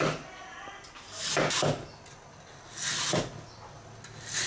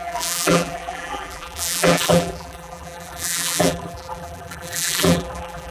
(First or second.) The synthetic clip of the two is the second